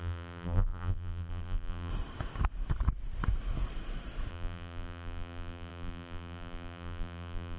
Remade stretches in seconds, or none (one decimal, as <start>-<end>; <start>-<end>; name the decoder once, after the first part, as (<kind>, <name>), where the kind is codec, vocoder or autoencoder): 0.0-1.9 (vocoder, BigVGAN v2); 4.3-7.6